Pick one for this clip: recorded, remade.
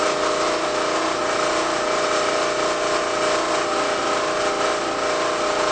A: recorded